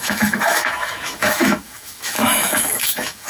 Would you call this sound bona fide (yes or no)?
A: no